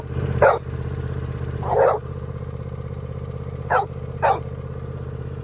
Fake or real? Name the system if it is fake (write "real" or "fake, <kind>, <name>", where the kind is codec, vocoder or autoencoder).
fake, vocoder, BigVGAN v2